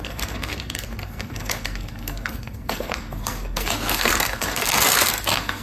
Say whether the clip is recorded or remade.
remade